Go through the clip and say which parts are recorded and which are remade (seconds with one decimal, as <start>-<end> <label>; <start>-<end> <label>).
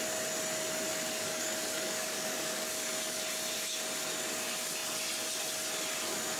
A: 0.0-0.9 recorded; 0.9-3.2 remade; 3.2-6.4 recorded